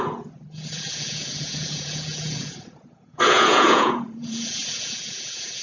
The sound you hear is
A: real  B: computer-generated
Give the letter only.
B